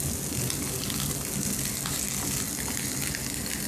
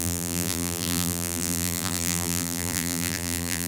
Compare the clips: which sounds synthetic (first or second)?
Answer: second